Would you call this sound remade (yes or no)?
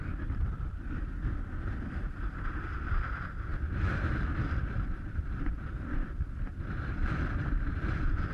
yes